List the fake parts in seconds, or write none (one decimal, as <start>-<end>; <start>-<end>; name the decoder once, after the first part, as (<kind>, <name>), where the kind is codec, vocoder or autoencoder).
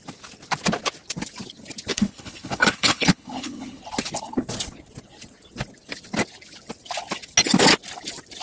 1.9-3.8 (codec, HILCodec)